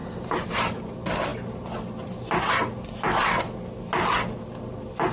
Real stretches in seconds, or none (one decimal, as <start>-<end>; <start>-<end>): 0.9-5.1

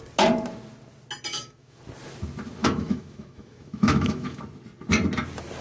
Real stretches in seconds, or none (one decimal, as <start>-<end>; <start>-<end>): 0.0-1.3; 1.8-2.6; 4.4-5.6

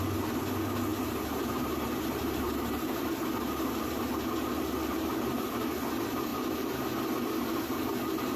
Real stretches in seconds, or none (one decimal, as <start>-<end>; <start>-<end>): 0.0-0.9; 4.0-8.4

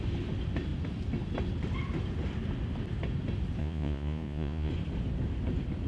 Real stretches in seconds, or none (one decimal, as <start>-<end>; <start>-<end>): 0.0-3.6; 4.7-5.9

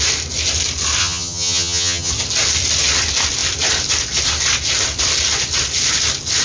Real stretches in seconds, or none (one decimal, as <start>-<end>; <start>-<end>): 0.0-1.0; 2.1-6.4

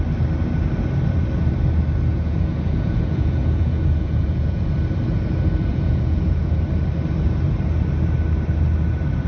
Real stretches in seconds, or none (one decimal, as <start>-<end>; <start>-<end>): 0.0-2.1; 4.7-5.7; 6.6-9.3

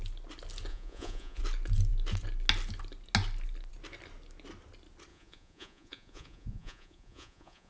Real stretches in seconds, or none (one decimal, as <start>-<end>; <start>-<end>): 0.0-0.7; 1.4-5.1

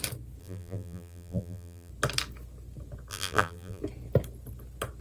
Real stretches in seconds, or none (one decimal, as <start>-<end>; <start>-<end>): 0.0-0.4; 1.9-3.1; 3.8-5.0